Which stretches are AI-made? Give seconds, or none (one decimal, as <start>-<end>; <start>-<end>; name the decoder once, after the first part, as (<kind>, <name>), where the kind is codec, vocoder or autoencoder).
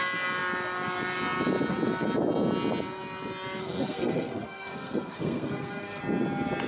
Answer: 3.6-6.0 (codec, SNAC)